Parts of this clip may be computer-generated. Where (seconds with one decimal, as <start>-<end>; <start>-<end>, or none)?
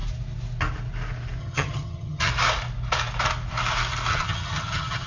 1.4-2.3; 4.1-5.1